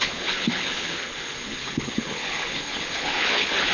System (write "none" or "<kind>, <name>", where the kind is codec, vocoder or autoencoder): codec, HILCodec